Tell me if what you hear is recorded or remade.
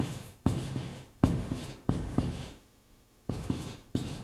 remade